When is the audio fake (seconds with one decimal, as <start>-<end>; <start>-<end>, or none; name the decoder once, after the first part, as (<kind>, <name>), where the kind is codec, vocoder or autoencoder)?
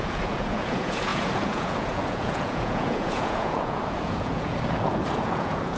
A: 0.0-5.8 (vocoder, Vocos)